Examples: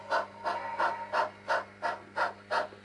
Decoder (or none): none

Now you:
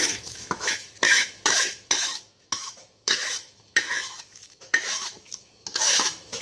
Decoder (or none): autoencoder, DAC-VAE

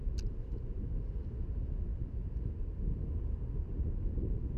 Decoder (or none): none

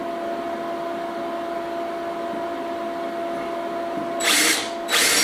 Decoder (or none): none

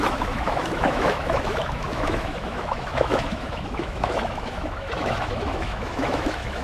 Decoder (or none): autoencoder, DAC-VAE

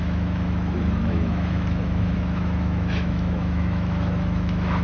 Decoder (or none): autoencoder, DAC-VAE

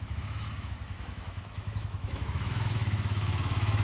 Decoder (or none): autoencoder, DAC-VAE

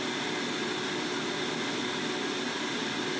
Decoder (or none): none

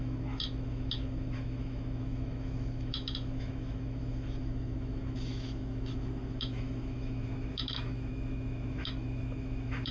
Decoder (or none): autoencoder, DAC-VAE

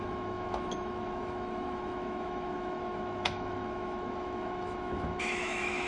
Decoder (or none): autoencoder, DAC-VAE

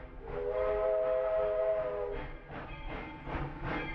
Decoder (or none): none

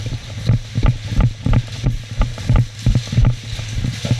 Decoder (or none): none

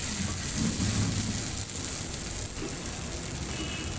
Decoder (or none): none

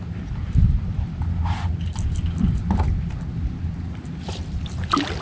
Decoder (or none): none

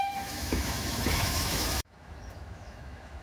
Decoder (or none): autoencoder, DAC-VAE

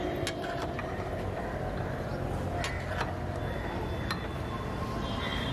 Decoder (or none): none